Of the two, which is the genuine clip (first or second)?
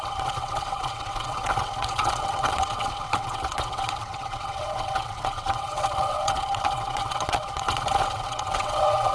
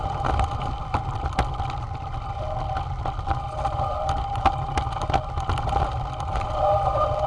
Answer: second